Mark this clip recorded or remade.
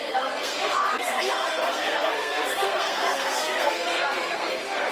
remade